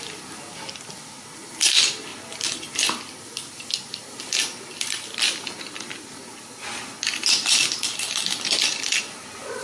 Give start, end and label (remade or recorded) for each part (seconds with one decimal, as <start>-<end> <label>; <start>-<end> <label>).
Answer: 0.0-9.6 recorded